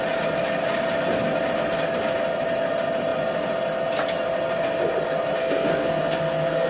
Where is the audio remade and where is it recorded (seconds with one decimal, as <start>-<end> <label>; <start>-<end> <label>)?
0.0-5.4 recorded; 5.4-6.7 remade